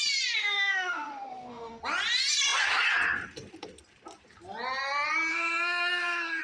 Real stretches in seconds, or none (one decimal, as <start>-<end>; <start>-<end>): 0.0-0.4; 1.8-5.3